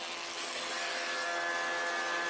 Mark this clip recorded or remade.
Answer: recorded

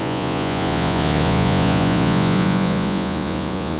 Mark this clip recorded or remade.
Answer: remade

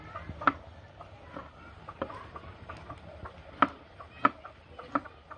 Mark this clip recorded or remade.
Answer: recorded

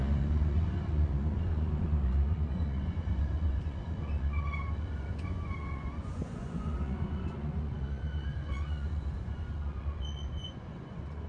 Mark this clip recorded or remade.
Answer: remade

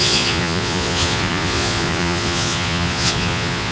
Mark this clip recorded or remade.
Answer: remade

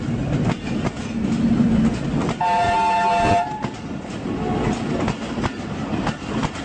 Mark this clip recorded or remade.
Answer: recorded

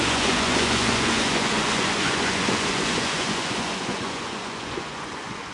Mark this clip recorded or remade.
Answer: remade